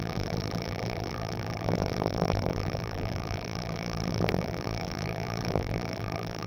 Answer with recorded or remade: remade